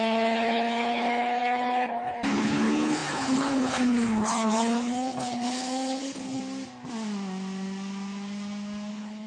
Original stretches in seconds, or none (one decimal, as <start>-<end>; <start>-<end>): 6.4-8.9